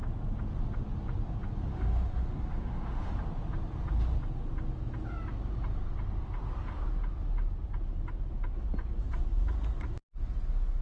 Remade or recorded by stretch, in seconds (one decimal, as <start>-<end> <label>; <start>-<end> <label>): 0.0-1.7 recorded; 1.7-3.1 remade; 3.1-10.8 recorded